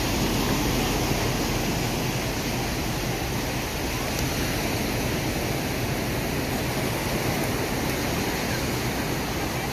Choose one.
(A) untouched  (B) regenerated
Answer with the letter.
A